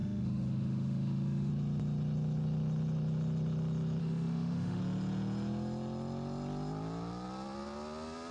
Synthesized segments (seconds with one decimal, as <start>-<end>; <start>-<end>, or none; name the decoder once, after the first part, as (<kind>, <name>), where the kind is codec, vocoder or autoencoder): 0.0-1.5 (autoencoder, DAC-VAE); 4.0-4.8